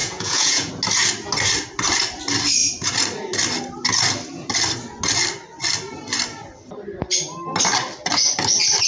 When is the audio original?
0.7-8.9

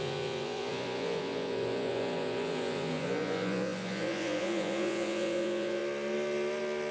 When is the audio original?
5.8-6.9

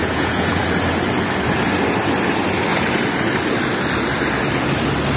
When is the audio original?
0.6-5.2

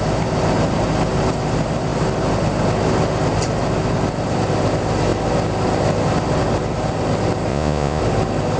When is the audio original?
0.0-7.5; 8.0-8.6

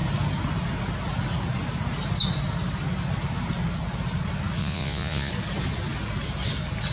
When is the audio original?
0.0-4.6; 5.3-6.9

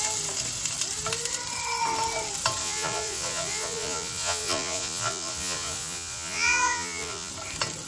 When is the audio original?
0.0-2.6; 7.3-7.9

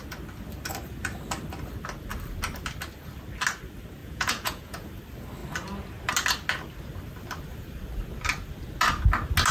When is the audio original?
0.0-4.0; 4.9-9.5